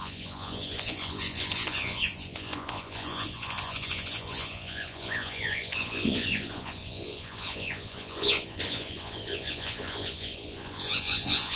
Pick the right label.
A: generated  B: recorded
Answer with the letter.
A